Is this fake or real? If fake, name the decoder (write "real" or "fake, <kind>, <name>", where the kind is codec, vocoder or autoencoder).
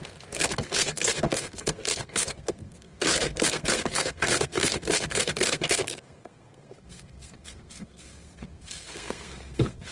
fake, codec, SNAC